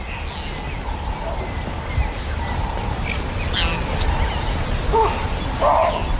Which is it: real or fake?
real